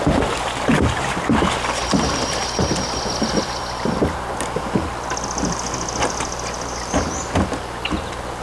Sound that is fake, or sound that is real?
real